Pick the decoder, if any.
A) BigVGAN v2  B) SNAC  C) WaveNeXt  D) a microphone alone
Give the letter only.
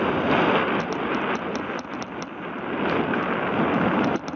D